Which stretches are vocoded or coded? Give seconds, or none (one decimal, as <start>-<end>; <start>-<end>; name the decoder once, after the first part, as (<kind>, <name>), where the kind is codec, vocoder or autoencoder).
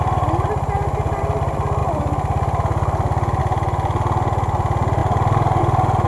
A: none